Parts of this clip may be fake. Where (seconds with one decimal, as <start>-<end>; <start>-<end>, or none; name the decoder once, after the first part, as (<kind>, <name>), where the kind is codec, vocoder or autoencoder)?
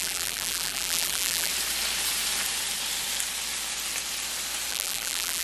0.0-1.5 (vocoder, BigVGAN v2); 4.7-5.4